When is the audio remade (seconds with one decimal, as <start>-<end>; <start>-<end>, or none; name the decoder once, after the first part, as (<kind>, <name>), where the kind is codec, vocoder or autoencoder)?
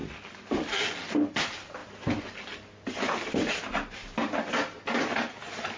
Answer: none